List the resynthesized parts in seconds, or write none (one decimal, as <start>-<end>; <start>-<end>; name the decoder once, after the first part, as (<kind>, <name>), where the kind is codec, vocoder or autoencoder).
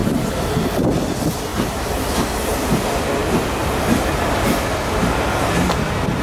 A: 0.0-0.9 (vocoder, BigVGAN v2); 1.5-2.7